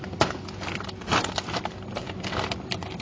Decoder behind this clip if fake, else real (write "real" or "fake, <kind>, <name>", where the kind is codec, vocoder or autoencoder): real